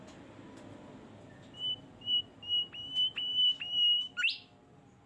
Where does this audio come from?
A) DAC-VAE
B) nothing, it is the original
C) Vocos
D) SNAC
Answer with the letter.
B